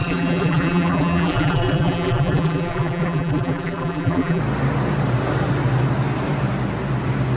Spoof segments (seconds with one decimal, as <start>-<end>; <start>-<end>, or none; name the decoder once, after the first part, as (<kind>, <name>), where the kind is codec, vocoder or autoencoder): 0.0-4.4 (vocoder, BigVGAN v2)